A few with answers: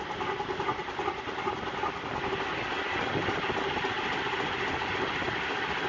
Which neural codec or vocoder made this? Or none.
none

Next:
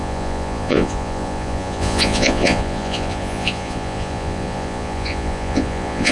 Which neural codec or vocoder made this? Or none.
vocoder, Vocos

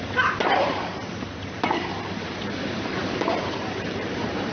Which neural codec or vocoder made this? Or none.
vocoder, BigVGAN v2